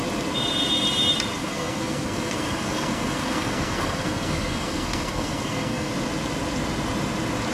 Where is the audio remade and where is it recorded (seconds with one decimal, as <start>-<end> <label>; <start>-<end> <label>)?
0.0-1.4 recorded; 1.4-5.9 remade; 5.9-7.5 recorded